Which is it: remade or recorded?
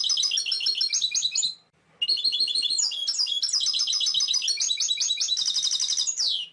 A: recorded